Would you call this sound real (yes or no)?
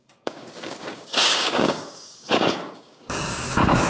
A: no